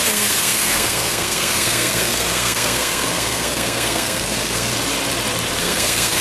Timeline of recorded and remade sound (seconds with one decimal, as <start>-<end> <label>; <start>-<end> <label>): 0.0-4.7 remade; 4.7-5.6 recorded; 5.6-6.2 remade